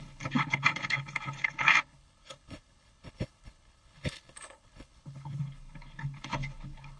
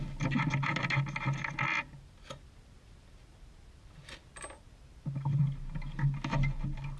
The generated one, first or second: first